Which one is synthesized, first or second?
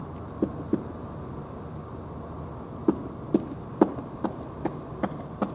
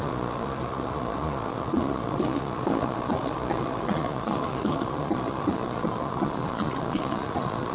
second